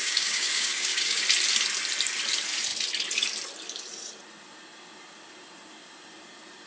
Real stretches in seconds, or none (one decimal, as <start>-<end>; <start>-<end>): 1.2-6.7